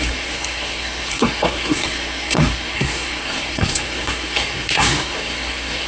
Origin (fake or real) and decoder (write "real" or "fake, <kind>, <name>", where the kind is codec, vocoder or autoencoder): fake, codec, SNAC